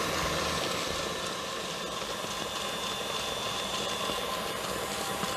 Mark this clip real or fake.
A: fake